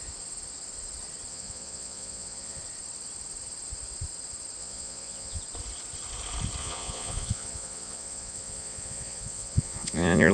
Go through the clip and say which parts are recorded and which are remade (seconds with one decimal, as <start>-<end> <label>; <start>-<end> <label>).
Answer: 0.0-1.3 recorded; 1.3-2.6 remade; 2.6-4.6 recorded; 4.6-5.4 remade; 5.4-6.6 recorded; 6.6-10.3 remade

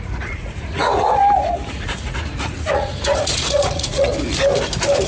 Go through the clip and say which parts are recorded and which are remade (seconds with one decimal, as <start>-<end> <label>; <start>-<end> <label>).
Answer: 0.0-1.2 remade; 1.2-1.7 recorded; 1.7-4.1 remade; 4.1-5.1 recorded